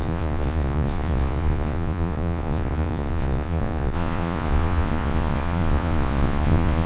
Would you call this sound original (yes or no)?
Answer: no